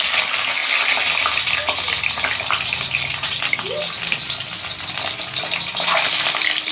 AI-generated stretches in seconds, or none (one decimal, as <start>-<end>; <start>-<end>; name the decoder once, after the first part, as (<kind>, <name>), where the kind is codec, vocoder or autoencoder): none